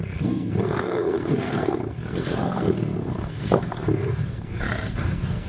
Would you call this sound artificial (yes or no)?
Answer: yes